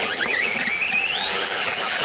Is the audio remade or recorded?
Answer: remade